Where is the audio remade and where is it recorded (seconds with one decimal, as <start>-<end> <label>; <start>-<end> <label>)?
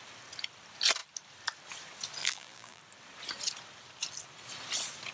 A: 0.0-2.2 recorded; 2.2-2.8 remade; 2.8-5.1 recorded